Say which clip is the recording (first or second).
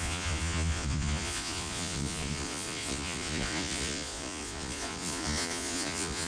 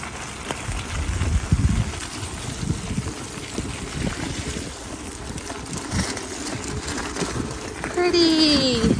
second